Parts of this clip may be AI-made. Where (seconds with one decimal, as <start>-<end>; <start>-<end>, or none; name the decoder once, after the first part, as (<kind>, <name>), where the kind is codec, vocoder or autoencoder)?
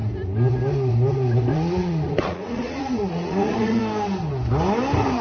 1.5-3.8 (vocoder, Vocos)